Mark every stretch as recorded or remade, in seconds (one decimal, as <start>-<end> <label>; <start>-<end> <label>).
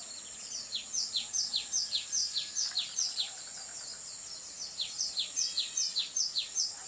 0.0-6.9 remade